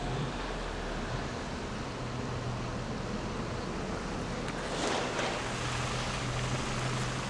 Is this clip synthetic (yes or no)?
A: no